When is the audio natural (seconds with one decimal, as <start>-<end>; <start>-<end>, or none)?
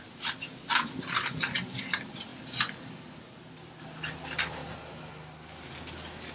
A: 0.0-6.3